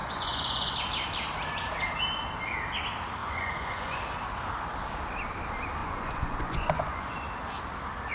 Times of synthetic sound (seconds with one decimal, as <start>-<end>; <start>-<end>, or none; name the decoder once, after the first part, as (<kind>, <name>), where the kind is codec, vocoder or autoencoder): 0.0-0.7 (vocoder, Vocos); 3.2-4.0; 5.8-7.1